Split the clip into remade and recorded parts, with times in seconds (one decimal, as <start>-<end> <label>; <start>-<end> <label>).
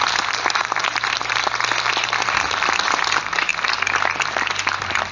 0.0-5.1 recorded